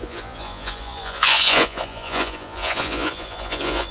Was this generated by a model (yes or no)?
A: yes